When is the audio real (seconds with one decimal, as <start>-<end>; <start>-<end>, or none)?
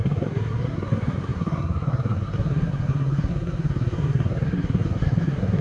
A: none